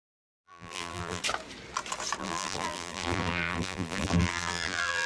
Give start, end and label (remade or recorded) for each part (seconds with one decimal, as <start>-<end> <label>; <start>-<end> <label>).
0.0-1.2 remade; 1.2-2.2 recorded; 2.2-5.1 remade